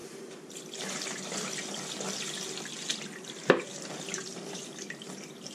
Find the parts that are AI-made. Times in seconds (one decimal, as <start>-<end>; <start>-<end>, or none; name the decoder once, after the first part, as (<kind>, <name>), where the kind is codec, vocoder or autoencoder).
0.0-1.8 (vocoder, BigVGAN v2); 2.9-4.8